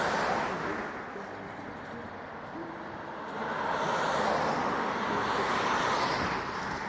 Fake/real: real